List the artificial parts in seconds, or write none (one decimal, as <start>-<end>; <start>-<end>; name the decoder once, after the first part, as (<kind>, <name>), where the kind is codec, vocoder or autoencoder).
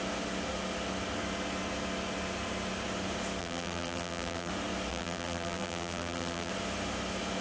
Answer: 3.4-4.5 (vocoder, BigVGAN v2); 4.9-6.5